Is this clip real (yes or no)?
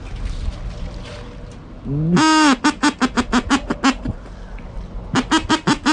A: yes